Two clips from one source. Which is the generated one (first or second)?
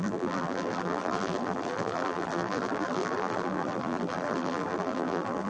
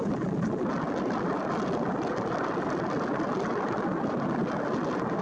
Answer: first